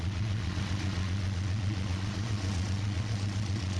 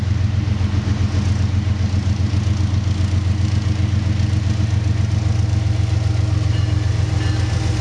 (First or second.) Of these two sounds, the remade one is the first